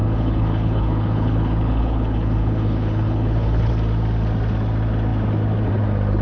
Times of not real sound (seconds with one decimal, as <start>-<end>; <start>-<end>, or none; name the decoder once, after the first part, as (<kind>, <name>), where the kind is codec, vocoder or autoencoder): 0.0-3.7 (codec, HILCodec)

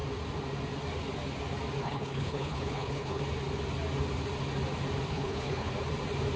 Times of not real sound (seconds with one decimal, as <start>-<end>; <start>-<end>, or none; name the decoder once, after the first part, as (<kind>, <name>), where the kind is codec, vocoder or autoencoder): 1.8-3.2 (codec, HILCodec); 5.1-5.7

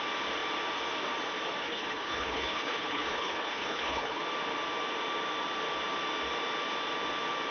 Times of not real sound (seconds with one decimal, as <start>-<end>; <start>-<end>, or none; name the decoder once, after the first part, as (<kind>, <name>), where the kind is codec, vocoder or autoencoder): 1.6-4.2 (codec, HILCodec)

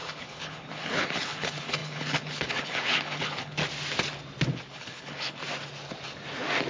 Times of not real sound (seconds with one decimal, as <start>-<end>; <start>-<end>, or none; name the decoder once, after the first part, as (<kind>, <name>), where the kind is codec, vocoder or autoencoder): 0.0-3.6 (codec, HILCodec); 4.7-5.4